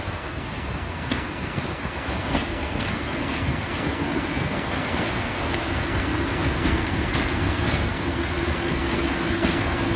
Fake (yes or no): yes